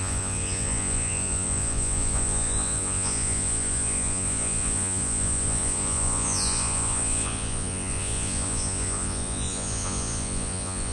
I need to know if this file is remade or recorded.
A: remade